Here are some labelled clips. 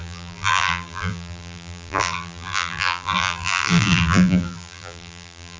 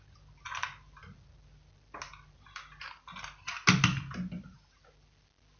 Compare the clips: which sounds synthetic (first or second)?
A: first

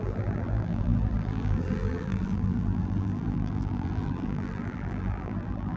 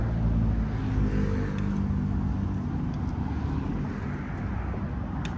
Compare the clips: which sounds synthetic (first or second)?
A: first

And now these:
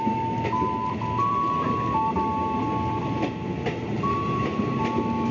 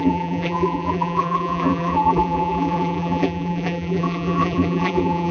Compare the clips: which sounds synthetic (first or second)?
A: second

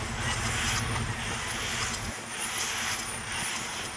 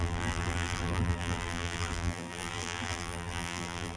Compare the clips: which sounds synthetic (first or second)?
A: second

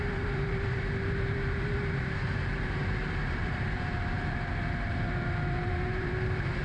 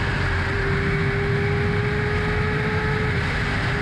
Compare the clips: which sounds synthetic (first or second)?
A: first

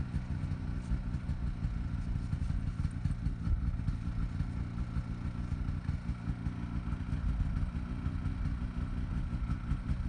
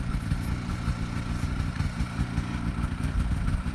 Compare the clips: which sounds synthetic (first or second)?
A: second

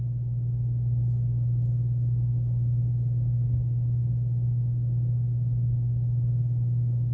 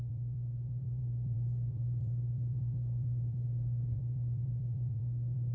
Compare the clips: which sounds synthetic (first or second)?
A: second